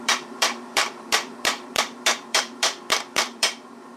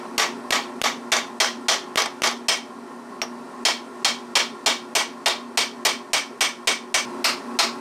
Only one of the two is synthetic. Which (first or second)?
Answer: first